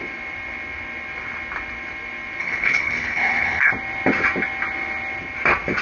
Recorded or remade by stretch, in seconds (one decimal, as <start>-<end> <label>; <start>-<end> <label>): 0.0-2.4 recorded; 2.4-3.7 remade; 3.7-5.8 recorded